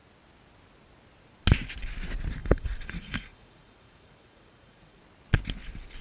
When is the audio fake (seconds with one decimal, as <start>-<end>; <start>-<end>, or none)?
2.4-5.0